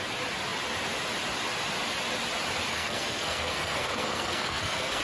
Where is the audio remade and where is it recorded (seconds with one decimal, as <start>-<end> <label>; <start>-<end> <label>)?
0.0-2.7 recorded; 2.7-5.0 remade